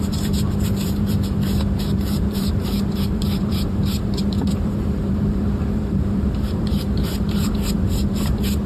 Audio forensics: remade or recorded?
remade